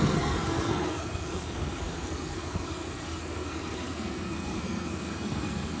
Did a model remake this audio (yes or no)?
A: yes